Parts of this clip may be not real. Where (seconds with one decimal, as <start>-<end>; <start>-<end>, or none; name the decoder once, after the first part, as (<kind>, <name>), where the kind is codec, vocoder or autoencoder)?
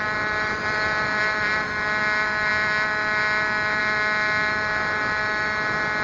none